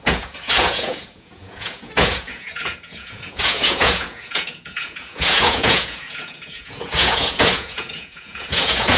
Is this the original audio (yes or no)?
no